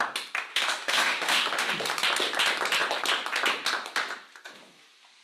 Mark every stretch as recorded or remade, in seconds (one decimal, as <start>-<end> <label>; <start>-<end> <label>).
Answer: 0.0-0.5 recorded; 0.5-1.7 remade; 1.7-5.2 recorded